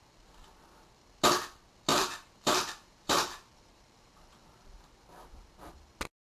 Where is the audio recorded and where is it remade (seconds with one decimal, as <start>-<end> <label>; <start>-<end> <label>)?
0.0-1.9 recorded; 1.9-4.8 remade; 4.8-6.4 recorded